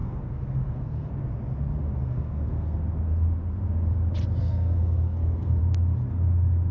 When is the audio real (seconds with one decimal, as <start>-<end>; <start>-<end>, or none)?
1.1-2.0; 2.8-4.4; 5.6-6.7

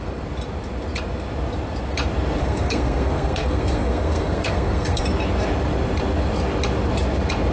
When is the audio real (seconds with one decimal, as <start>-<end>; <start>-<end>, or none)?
0.0-2.4; 5.0-7.5

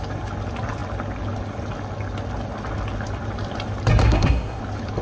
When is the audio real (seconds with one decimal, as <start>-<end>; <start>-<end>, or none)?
0.0-4.0; 4.6-5.0

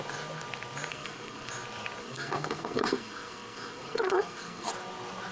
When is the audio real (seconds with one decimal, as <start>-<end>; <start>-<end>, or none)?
0.0-0.9; 1.5-2.0; 4.7-5.3

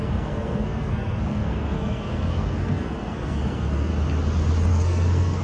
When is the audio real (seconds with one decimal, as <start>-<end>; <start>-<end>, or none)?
3.9-4.7

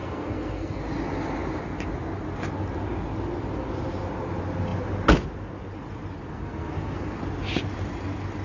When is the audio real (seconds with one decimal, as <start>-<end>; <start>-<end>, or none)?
0.8-6.3; 7.2-8.4

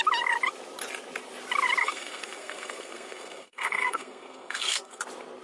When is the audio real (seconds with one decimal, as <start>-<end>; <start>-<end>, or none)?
0.0-1.8; 5.0-5.4

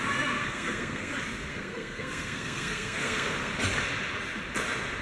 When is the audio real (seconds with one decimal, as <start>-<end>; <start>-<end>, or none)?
0.0-0.4; 1.1-1.5; 3.5-5.0